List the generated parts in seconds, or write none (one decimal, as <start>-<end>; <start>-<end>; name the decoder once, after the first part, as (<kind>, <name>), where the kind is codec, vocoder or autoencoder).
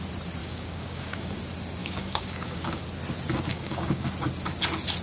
0.4-1.4 (codec, DAC); 1.8-2.8; 3.5-4.1